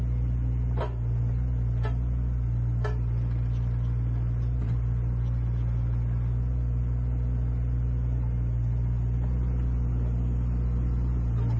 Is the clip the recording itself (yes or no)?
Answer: yes